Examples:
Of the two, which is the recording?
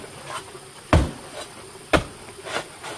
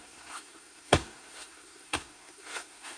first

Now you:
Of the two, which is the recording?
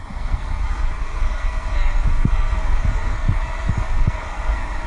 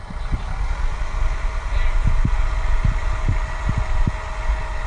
second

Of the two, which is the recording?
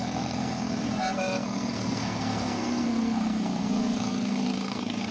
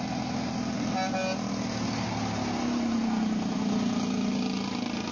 second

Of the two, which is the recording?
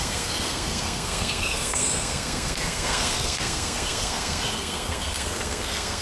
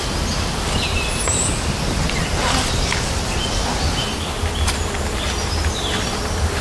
second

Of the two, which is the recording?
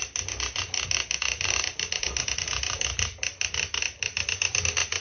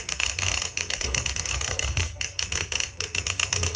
first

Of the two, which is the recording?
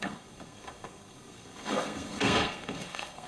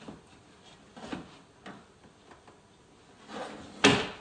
second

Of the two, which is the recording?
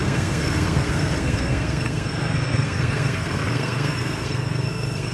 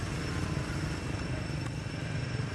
second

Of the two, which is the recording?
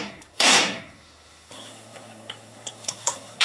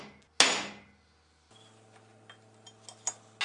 second